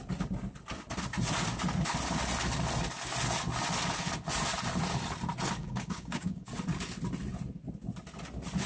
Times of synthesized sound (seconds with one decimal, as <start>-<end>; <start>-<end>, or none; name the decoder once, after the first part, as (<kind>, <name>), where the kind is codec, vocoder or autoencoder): 5.6-6.5 (codec, DAC)

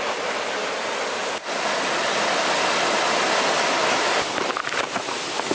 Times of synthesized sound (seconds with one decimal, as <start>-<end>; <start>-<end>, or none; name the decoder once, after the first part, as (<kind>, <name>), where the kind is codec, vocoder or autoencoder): none

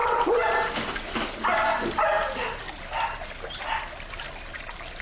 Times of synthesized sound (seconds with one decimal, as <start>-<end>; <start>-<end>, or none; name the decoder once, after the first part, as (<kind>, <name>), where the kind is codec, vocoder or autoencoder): none

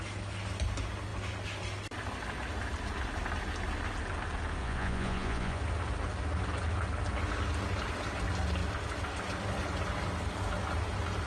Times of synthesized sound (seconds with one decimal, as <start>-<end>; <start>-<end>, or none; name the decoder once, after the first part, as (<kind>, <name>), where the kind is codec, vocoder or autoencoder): 4.6-5.6 (vocoder, Vocos)

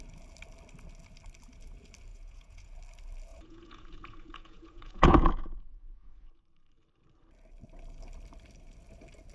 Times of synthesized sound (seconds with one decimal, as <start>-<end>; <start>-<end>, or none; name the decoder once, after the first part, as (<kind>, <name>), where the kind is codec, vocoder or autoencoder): 2.1-2.7 (vocoder, Vocos); 3.3-6.4